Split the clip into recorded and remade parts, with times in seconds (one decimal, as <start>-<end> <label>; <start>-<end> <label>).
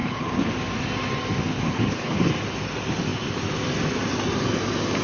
0.0-0.5 remade; 0.5-1.5 recorded; 1.5-2.3 remade; 2.3-5.0 recorded